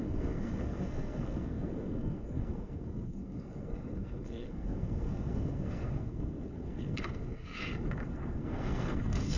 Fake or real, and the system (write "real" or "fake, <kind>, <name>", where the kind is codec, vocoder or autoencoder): fake, codec, SNAC